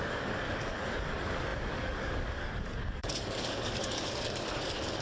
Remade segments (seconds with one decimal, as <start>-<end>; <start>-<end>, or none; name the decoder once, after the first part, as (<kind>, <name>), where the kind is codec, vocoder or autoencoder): 0.0-5.0 (codec, DAC)